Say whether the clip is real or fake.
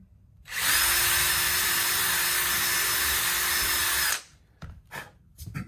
real